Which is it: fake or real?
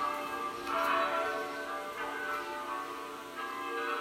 real